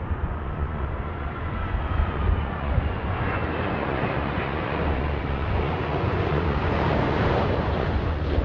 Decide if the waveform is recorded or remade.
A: remade